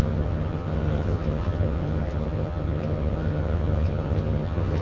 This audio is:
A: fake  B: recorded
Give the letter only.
A